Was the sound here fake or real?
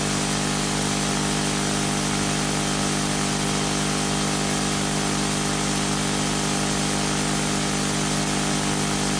real